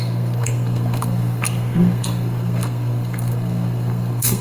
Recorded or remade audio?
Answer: remade